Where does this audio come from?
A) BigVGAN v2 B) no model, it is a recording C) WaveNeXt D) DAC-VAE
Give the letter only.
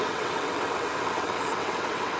C